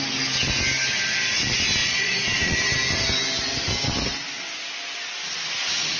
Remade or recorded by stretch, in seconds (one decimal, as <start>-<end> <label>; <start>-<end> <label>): 0.0-1.8 recorded; 1.8-2.7 remade; 2.7-6.0 recorded